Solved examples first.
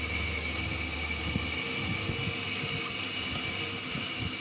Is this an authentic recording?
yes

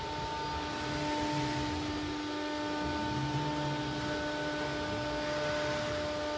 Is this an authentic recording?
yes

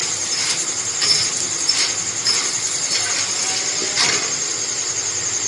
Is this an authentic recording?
yes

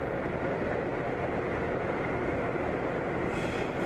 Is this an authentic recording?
yes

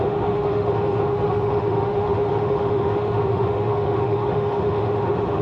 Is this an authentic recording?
no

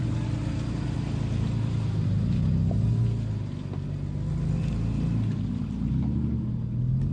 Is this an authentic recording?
yes